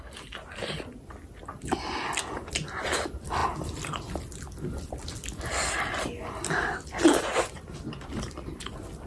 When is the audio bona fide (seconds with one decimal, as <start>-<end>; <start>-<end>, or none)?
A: 0.0-9.1